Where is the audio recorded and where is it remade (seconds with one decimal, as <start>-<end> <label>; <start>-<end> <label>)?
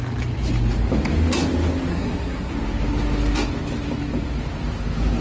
0.0-1.9 recorded; 1.9-2.5 remade; 2.5-5.2 recorded